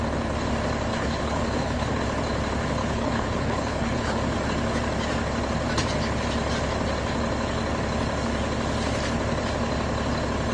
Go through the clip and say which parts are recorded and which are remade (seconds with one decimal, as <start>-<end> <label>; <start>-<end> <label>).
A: 0.0-0.9 recorded; 0.9-2.0 remade; 2.0-2.8 recorded; 2.8-4.2 remade; 4.2-10.5 recorded